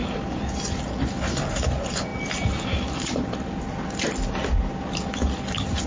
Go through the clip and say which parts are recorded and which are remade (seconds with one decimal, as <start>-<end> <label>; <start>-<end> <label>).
0.0-5.9 recorded